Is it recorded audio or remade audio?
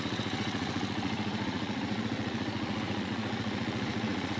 remade